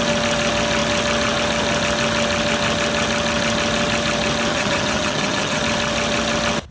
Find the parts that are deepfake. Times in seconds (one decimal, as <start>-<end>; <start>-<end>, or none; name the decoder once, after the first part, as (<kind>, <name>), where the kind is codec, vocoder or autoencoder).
4.5-5.6 (vocoder, HiFi-GAN)